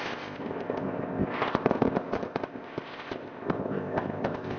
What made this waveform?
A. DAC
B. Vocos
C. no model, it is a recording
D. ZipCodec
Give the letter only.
D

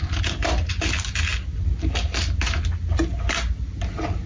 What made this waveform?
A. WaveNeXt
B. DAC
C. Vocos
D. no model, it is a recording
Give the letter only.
D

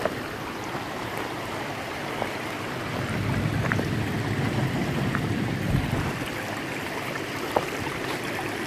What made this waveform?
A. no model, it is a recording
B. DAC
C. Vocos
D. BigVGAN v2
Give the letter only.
D